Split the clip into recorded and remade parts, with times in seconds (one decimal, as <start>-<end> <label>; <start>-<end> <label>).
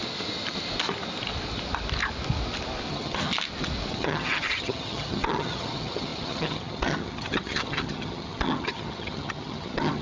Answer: 0.0-2.9 recorded; 2.9-3.3 remade; 3.3-3.9 recorded; 3.9-10.0 remade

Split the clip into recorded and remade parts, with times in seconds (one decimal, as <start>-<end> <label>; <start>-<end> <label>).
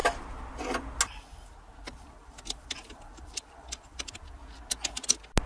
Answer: 0.0-2.2 recorded; 2.2-4.1 remade; 4.1-5.5 recorded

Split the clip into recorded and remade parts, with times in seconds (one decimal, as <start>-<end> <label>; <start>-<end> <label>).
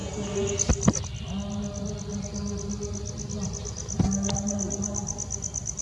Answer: 0.0-5.8 recorded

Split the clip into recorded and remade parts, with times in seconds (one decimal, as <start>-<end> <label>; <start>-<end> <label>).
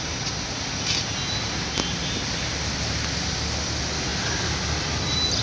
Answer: 0.0-5.4 recorded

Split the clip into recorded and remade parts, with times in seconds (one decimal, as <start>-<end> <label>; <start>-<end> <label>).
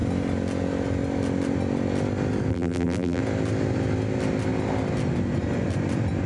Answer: 0.0-2.5 recorded; 2.5-3.2 remade; 3.2-6.3 recorded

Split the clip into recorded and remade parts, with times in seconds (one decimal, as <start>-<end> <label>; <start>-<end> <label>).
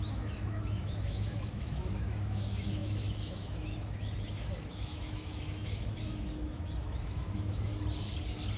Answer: 0.0-7.7 remade; 7.7-8.6 recorded